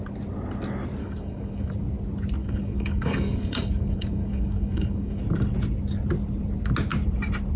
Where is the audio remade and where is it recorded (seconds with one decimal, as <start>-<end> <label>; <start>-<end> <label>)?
0.0-1.0 recorded; 1.0-1.7 remade; 1.7-2.4 recorded; 2.4-5.2 remade; 5.2-7.6 recorded